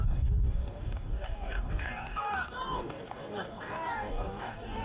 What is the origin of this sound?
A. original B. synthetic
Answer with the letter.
B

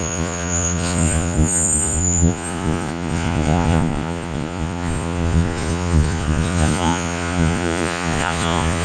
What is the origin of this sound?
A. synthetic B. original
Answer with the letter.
A